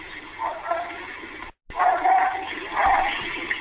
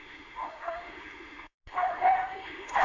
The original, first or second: first